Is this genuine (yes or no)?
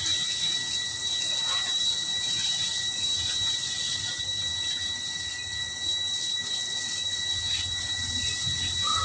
yes